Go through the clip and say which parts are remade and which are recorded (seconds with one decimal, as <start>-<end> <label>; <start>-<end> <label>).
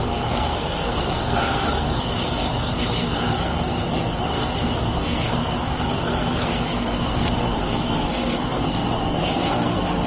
0.0-10.1 remade